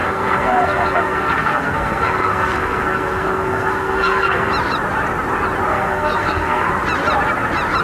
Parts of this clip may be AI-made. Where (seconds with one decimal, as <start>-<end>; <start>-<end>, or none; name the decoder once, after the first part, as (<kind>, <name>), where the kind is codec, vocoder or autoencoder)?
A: 0.0-4.5 (codec, SNAC); 5.7-6.7

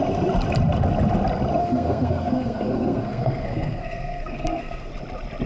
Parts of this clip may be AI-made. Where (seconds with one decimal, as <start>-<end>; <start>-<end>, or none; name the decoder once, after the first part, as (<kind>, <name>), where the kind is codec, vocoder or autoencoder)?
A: 1.6-4.9 (codec, SNAC)

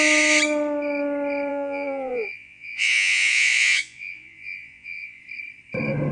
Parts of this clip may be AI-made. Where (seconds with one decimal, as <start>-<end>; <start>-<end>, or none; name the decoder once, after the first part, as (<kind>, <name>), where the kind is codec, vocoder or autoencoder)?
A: 1.5-5.2 (vocoder, Vocos)

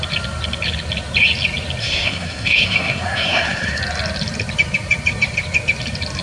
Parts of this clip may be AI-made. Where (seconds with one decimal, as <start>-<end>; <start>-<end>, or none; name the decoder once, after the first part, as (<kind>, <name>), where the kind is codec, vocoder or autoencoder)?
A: 1.8-3.8 (codec, SNAC)

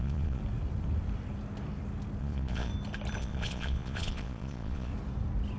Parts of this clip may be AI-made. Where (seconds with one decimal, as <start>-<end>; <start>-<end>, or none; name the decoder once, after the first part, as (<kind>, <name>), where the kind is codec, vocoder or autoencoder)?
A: 0.0-0.4 (vocoder, Vocos); 2.2-2.7; 3.2-4.9